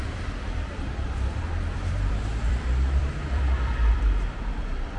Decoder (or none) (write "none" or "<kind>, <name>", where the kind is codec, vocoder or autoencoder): vocoder, BigVGAN v2